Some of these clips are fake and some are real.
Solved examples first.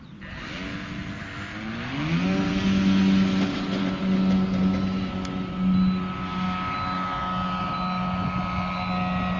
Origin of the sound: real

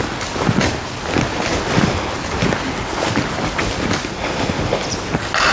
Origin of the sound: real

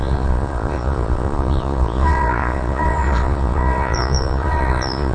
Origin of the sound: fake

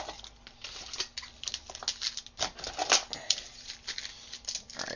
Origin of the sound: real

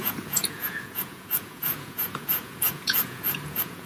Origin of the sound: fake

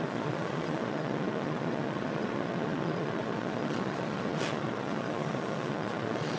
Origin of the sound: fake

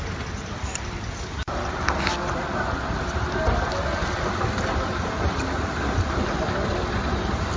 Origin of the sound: real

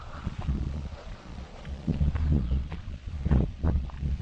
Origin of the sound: fake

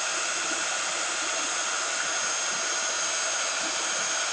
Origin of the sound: real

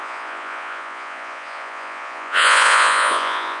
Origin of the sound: fake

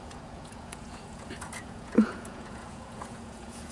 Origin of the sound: fake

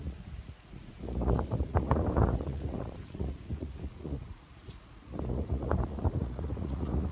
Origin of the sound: fake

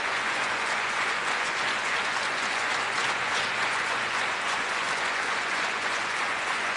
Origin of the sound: fake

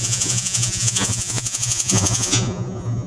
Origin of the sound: fake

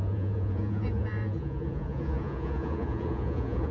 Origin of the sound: fake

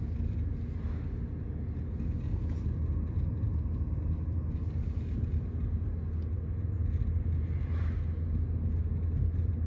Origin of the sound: real